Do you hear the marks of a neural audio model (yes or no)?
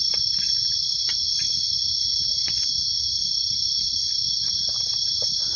no